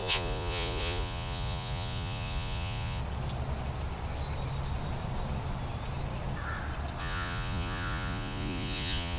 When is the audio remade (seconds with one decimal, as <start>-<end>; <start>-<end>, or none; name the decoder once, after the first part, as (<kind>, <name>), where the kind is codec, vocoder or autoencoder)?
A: 0.0-3.0 (vocoder, Vocos); 7.0-9.2